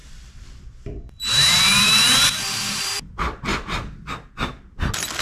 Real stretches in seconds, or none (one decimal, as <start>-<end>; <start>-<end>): 3.1-5.2